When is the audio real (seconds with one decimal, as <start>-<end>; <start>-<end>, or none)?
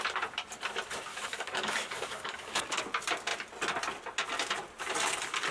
0.0-1.1; 2.8-5.5